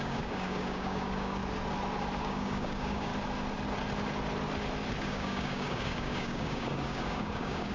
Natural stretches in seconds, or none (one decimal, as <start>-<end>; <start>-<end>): 1.4-2.2; 3.1-5.0